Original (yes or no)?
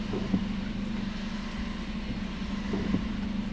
yes